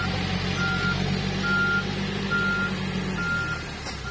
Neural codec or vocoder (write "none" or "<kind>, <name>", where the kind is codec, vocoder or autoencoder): none